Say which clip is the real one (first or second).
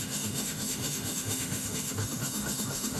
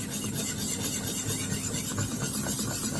second